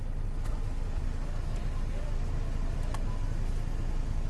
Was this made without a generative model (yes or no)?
yes